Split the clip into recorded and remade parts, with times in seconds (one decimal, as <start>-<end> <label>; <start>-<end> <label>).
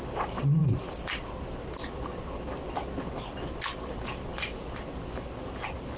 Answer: 0.0-6.0 recorded